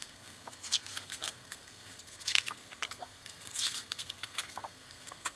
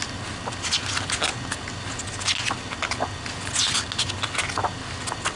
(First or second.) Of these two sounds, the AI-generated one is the first